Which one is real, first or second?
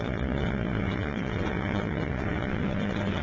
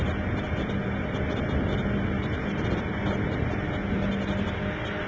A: second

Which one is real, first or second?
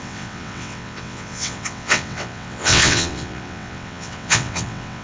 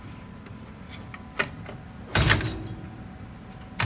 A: second